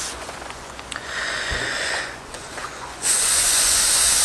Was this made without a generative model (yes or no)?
no